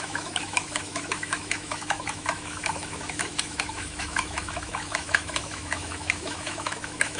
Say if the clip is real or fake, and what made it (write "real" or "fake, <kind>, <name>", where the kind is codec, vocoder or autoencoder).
fake, autoencoder, DAC-VAE